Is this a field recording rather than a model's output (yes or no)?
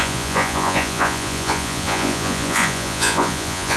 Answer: no